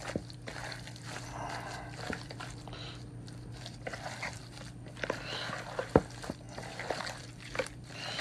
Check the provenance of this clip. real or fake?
real